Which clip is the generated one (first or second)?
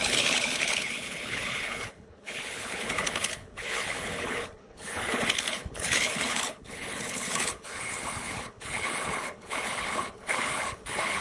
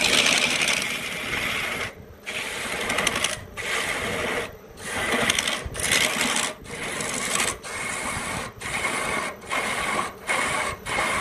first